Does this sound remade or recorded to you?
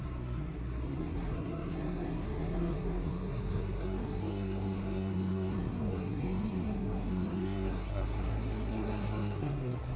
remade